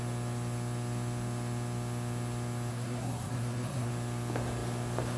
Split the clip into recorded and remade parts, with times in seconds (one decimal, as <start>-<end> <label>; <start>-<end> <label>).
0.0-2.7 recorded; 2.7-3.9 remade; 3.9-5.2 recorded